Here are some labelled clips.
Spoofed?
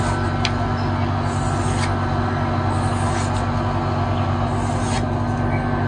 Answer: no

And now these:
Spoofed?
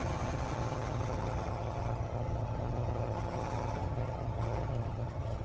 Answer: yes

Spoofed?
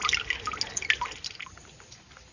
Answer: no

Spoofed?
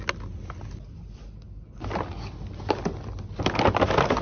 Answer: no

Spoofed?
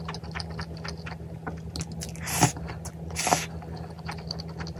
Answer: no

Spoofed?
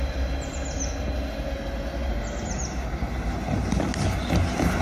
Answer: no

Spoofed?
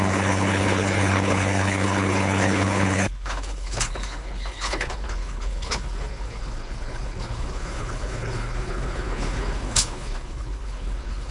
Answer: yes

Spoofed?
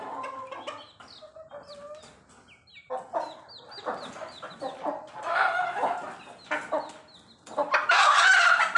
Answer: no